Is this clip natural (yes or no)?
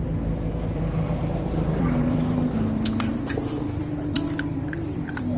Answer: no